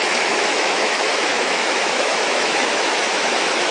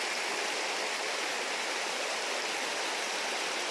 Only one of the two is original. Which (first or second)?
second